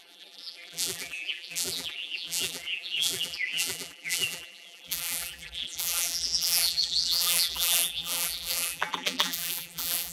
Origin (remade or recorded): remade